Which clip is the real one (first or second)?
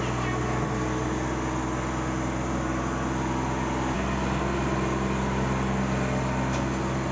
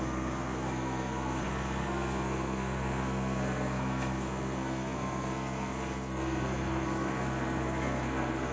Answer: first